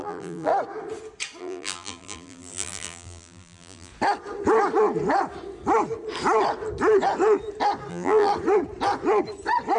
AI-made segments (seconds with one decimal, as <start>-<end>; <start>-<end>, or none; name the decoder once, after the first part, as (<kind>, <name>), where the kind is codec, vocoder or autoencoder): 0.0-0.5 (vocoder, BigVGAN v2); 1.4-3.9; 7.9-8.3

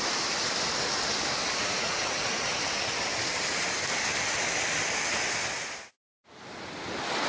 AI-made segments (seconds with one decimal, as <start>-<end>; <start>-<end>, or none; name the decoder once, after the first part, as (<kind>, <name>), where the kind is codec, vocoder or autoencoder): 1.6-2.6 (vocoder, Vocos)

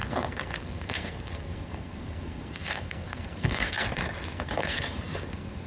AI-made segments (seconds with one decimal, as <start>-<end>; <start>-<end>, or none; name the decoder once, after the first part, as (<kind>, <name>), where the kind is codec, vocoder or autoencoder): 0.0-5.7 (codec, SNAC)

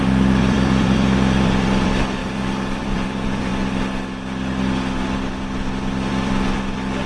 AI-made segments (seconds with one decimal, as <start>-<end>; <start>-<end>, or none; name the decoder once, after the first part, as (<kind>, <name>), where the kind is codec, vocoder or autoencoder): 0.0-3.5 (vocoder, BigVGAN v2); 6.1-7.1